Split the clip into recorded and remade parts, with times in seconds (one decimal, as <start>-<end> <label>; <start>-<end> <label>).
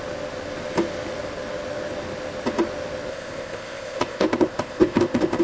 0.0-3.1 recorded; 3.1-5.4 remade